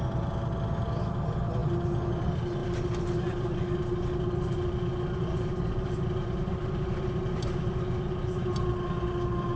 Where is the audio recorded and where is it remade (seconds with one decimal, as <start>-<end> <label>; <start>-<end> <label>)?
0.0-9.6 recorded